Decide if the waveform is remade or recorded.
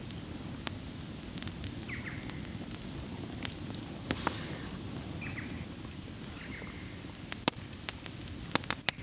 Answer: recorded